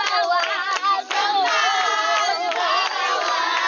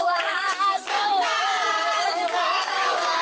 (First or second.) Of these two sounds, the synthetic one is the second